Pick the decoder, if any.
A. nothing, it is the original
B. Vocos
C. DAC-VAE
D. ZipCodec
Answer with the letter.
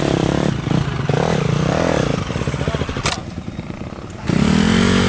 A